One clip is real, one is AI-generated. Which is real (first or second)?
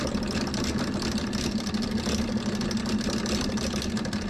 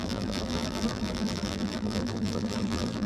first